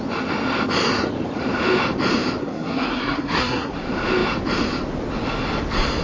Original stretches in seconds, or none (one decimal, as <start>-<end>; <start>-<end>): 0.0-2.4; 3.7-6.0